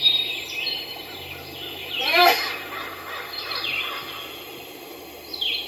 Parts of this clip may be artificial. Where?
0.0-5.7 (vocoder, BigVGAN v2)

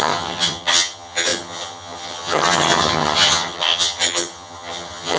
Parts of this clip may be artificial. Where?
0.0-5.2 (vocoder, HiFi-GAN)

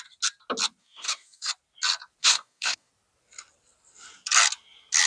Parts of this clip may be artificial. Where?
0.8-1.5 (codec, DAC); 2.2-2.9

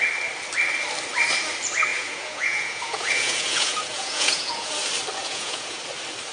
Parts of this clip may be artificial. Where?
1.9-4.7 (vocoder, Vocos); 5.2-5.8